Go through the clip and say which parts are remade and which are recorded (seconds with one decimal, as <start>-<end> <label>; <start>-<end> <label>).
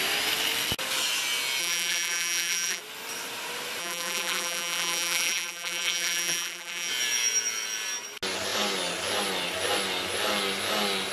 0.0-1.6 recorded; 1.6-2.8 remade; 2.8-3.8 recorded; 3.8-6.9 remade; 6.9-11.1 recorded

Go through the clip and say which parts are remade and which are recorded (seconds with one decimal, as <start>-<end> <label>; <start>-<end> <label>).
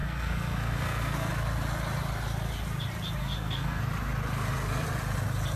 0.0-1.3 remade; 1.3-3.2 recorded; 3.2-3.8 remade; 3.8-5.6 recorded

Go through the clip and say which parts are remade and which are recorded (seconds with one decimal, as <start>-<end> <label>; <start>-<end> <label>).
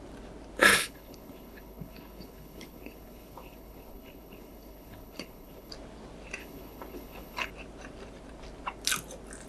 0.0-0.7 recorded; 0.7-5.7 remade; 5.7-6.4 recorded; 6.4-7.5 remade; 7.5-9.5 recorded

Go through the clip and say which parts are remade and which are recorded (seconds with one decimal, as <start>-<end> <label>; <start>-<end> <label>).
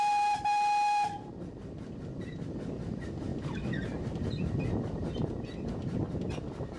0.0-6.8 recorded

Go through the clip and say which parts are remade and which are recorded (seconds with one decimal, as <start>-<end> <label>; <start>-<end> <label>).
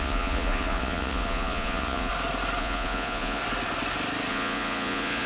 0.0-2.1 remade; 2.1-2.6 recorded; 2.6-3.4 remade; 3.4-4.3 recorded; 4.3-5.3 remade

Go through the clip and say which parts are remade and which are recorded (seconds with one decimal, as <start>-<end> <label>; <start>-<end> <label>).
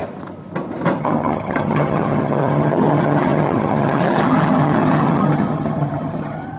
0.0-1.0 recorded; 1.0-6.6 remade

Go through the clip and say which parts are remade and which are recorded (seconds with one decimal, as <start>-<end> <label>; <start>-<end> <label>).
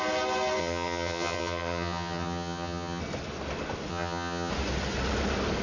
0.0-0.6 recorded; 0.6-3.0 remade; 3.0-3.9 recorded; 3.9-4.5 remade; 4.5-5.6 recorded